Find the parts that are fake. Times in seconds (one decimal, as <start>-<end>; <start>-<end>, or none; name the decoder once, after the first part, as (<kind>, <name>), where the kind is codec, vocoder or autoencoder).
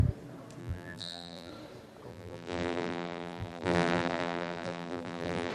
0.6-1.5 (vocoder, BigVGAN v2); 2.1-5.5